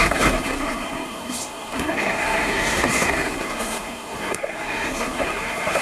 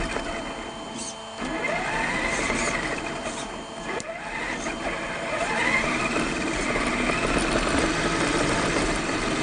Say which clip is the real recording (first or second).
second